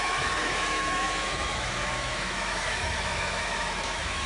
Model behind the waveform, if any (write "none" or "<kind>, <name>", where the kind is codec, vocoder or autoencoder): autoencoder, DAC-VAE